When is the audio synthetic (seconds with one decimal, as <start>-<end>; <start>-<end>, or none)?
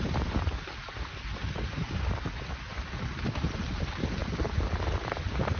none